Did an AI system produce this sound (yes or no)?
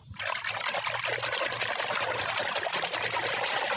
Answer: no